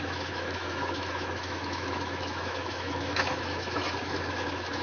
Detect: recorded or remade remade